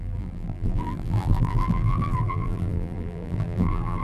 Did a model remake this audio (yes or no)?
yes